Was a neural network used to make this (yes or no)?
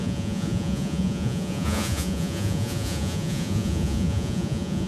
yes